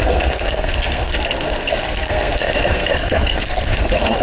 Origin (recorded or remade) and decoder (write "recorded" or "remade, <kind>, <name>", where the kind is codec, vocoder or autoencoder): remade, codec, SNAC